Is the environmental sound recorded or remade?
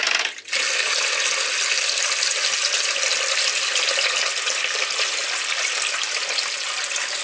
recorded